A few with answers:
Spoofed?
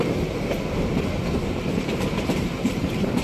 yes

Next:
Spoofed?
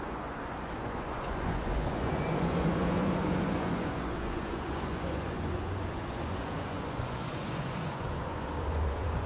yes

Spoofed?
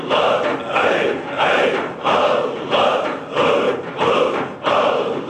no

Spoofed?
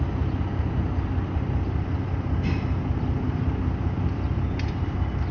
no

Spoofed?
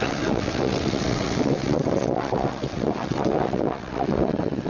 yes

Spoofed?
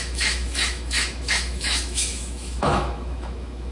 yes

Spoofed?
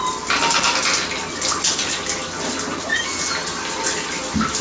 no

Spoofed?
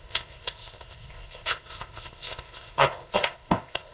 yes